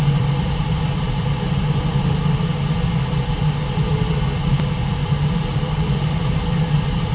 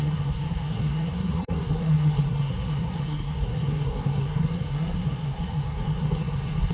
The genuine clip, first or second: first